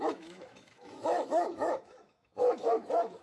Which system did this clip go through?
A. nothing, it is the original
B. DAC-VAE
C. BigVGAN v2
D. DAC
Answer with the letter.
B